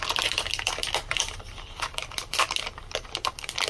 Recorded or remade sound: remade